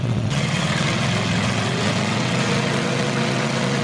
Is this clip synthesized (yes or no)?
yes